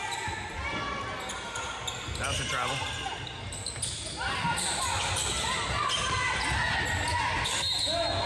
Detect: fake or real real